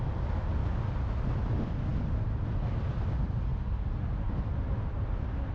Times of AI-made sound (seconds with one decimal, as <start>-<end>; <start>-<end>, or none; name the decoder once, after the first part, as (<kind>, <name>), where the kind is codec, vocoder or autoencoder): none